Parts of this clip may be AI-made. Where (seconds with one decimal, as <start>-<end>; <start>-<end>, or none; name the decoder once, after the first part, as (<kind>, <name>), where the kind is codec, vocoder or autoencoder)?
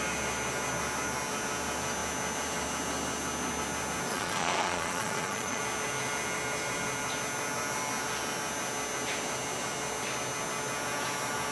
4.1-5.6 (vocoder, Vocos)